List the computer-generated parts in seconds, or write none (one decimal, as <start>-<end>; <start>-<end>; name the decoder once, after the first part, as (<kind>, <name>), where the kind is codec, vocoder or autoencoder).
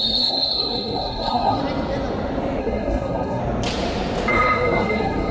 0.0-1.6 (codec, SNAC); 2.6-3.4; 4.3-5.3